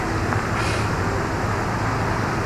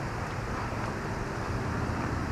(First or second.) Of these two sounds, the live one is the first